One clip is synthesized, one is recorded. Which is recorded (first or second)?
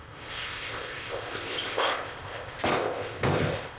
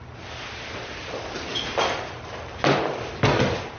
second